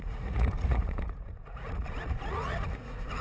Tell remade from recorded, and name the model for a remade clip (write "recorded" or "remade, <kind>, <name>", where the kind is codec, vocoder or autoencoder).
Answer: remade, vocoder, Vocos